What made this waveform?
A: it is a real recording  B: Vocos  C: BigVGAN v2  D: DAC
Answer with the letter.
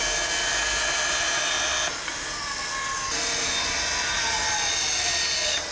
A